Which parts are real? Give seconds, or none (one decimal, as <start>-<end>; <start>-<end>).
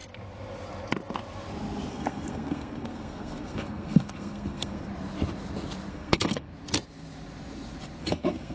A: 0.0-1.9; 4.9-5.9; 6.5-8.0